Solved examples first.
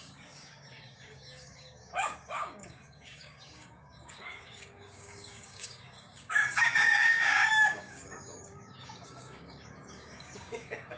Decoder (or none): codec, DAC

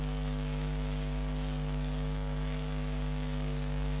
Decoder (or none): codec, DAC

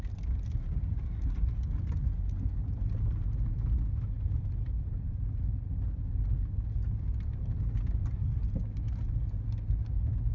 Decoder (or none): none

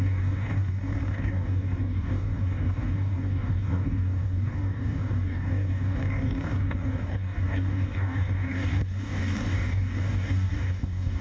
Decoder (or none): codec, DAC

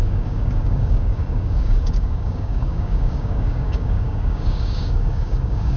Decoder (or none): codec, DAC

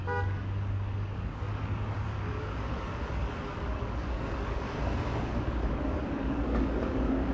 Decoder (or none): codec, DAC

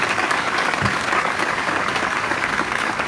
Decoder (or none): codec, DAC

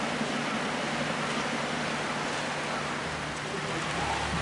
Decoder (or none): none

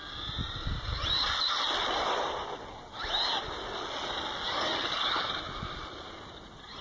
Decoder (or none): none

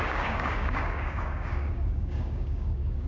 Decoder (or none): codec, DAC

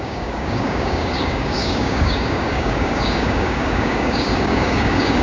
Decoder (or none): codec, DAC